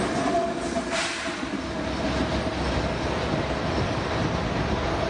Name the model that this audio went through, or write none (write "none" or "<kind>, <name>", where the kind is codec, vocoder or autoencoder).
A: none